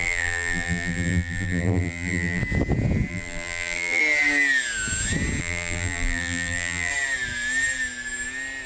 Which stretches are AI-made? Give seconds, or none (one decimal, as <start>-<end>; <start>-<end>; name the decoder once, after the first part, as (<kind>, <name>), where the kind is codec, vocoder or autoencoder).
0.0-2.4 (vocoder, BigVGAN v2); 3.1-4.0; 5.4-6.9

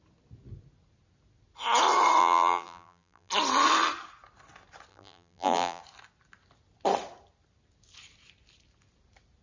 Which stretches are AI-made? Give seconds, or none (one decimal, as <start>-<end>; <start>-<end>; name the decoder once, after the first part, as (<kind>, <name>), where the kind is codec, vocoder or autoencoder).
2.2-3.3 (vocoder, BigVGAN v2); 4.9-5.8

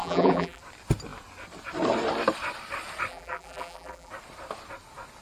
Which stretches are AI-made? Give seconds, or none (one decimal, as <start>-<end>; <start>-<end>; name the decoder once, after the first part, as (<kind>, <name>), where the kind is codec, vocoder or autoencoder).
0.0-0.6 (vocoder, BigVGAN v2); 3.1-4.1

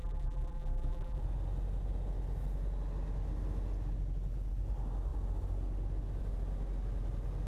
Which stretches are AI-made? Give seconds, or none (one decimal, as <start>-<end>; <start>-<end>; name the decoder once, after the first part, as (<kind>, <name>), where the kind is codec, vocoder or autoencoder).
0.0-1.2 (vocoder, BigVGAN v2)

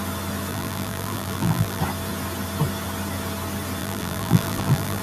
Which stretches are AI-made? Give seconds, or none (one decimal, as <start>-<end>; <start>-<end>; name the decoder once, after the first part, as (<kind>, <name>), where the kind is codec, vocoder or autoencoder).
0.5-1.8 (vocoder, BigVGAN v2); 3.8-5.0

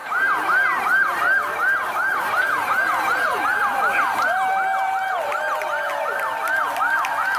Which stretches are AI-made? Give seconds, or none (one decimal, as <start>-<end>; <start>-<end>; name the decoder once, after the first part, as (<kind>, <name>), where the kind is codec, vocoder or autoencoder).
0.0-1.2 (vocoder, BigVGAN v2); 5.3-5.9